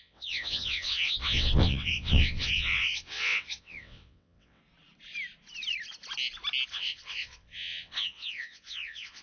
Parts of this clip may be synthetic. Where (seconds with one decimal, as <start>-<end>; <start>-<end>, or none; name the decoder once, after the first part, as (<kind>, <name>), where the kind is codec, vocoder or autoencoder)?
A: 0.0-4.6 (vocoder, WaveNeXt); 6.7-9.2

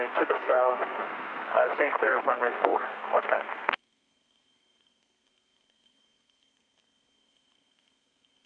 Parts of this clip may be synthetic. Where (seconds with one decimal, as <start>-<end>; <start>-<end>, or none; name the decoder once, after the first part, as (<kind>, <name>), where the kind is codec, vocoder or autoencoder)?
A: 0.0-8.5 (codec, SNAC)